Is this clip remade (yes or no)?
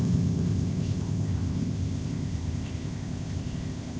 yes